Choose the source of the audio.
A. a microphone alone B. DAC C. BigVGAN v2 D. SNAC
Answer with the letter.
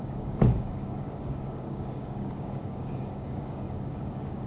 B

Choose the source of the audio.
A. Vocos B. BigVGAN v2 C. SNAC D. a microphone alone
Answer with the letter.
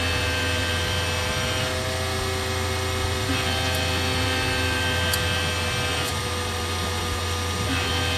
D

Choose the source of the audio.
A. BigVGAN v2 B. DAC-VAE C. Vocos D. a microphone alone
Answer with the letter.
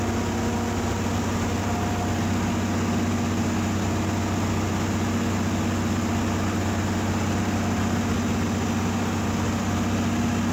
D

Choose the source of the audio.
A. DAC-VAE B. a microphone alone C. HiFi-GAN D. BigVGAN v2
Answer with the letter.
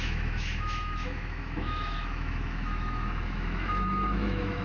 A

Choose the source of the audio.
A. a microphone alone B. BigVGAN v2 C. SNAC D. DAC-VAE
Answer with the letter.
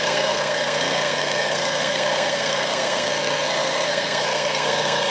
C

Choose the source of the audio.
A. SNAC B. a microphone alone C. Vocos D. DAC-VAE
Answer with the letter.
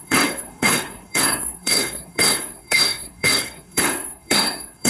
A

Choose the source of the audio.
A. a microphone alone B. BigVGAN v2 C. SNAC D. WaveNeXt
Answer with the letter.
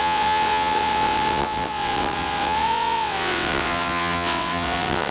D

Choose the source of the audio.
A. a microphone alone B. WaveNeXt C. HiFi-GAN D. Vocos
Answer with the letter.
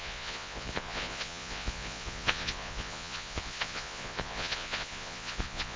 D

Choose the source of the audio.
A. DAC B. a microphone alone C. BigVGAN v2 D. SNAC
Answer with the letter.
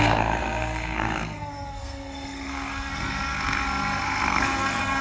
D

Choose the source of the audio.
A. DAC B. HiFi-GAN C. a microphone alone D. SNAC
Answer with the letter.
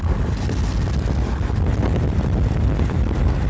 C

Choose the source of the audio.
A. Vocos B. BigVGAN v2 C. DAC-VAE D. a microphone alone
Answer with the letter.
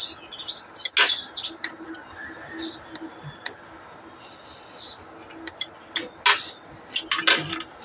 D